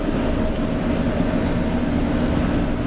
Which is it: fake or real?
real